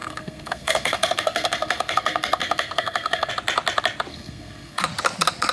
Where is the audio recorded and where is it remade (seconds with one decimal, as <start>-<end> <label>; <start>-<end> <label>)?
0.0-3.3 remade; 3.3-4.1 recorded; 4.1-4.8 remade; 4.8-5.5 recorded

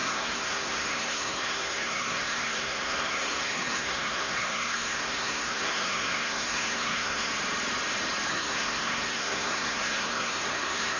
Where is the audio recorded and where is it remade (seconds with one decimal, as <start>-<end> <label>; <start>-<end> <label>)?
0.0-7.3 remade; 7.3-8.3 recorded; 8.3-11.0 remade

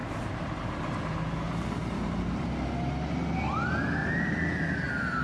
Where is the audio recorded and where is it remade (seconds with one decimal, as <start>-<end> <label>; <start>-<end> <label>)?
0.0-2.5 remade; 2.5-4.0 recorded; 4.0-4.6 remade; 4.6-5.2 recorded

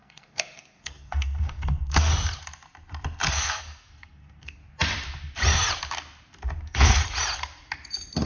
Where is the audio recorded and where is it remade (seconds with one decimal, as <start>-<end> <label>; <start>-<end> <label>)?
0.0-2.1 remade; 2.1-3.3 recorded; 3.3-4.6 remade; 4.6-6.6 recorded; 6.6-7.0 remade; 7.0-8.3 recorded

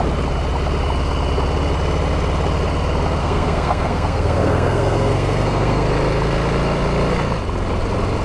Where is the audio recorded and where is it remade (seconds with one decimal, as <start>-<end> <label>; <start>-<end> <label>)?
0.0-3.2 recorded; 3.2-5.9 remade; 5.9-8.2 recorded

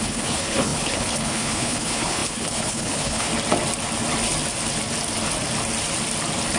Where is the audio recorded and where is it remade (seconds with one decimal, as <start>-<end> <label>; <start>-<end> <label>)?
0.0-3.3 remade; 3.3-6.6 recorded